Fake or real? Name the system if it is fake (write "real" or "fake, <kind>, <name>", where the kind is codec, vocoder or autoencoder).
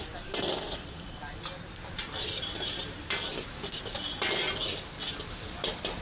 real